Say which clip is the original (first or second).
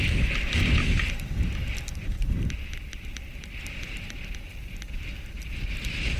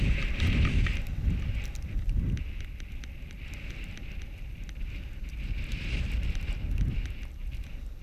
second